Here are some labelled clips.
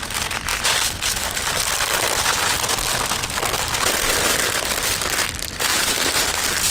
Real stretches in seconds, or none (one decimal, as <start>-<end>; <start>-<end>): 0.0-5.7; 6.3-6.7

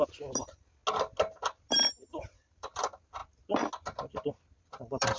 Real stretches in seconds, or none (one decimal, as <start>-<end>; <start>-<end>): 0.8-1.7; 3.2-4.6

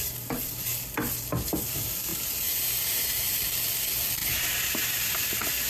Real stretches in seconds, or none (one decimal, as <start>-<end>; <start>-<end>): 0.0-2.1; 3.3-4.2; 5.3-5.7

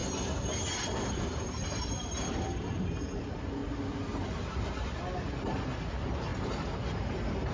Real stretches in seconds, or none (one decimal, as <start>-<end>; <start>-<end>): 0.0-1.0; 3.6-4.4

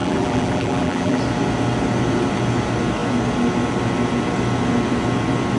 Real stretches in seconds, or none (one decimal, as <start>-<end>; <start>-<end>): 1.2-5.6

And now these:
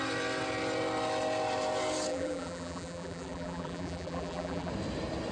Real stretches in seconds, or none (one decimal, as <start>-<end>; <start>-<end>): 0.0-2.1; 4.7-5.3